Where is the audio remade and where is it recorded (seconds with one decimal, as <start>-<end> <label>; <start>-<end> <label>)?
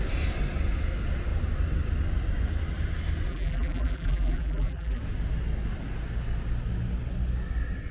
0.0-3.3 recorded; 3.3-5.0 remade; 5.0-7.9 recorded